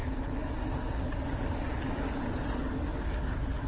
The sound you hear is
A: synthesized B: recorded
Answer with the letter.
B